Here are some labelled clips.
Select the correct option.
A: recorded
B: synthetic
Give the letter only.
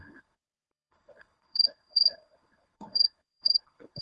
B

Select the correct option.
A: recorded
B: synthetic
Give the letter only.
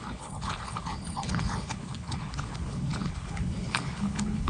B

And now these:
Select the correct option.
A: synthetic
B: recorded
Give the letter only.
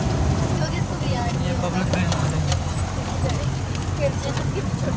B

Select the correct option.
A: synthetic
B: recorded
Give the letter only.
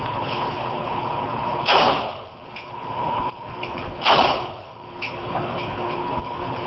A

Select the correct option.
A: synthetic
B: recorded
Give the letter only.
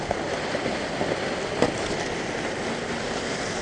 B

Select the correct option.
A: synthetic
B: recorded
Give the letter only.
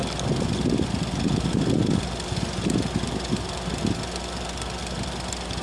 B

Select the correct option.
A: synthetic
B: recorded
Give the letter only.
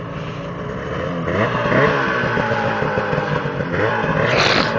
B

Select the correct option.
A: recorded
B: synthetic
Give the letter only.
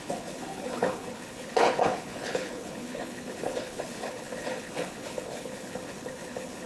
B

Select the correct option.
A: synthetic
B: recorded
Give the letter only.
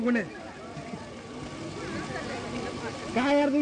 B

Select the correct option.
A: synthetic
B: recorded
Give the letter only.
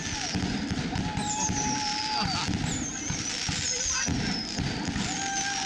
B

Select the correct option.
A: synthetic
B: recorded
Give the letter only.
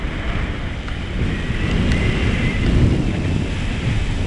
B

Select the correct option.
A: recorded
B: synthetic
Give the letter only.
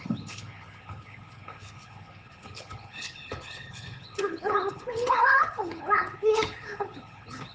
B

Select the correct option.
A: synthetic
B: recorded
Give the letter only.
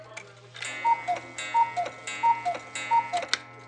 B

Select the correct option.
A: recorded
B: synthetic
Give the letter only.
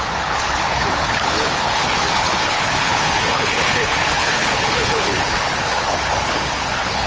B